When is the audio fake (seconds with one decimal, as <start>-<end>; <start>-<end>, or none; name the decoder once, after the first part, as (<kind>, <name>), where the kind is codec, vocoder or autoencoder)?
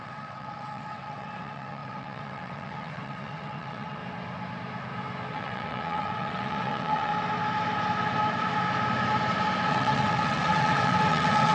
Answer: 0.0-4.0 (vocoder, WaveNeXt); 5.3-7.1; 9.7-11.5